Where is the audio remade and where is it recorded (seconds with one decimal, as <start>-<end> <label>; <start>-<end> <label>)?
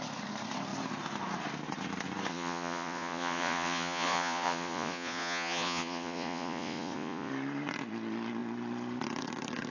0.0-2.3 recorded; 2.3-7.3 remade; 7.3-9.7 recorded